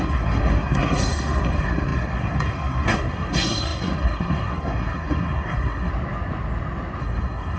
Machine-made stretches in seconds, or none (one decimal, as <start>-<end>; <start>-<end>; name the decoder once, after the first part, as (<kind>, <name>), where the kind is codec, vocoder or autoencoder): 0.0-5.9 (codec, SNAC); 7.0-7.6